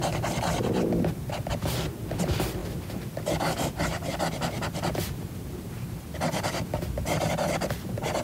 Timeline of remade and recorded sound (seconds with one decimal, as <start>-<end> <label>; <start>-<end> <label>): 0.0-2.6 recorded; 2.6-7.3 remade; 7.3-8.2 recorded